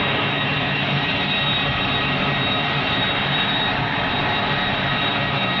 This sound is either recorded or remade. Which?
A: remade